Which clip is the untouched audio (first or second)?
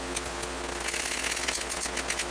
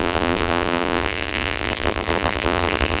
first